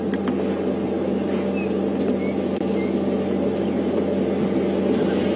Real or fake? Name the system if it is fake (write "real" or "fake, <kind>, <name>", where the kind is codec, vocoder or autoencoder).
real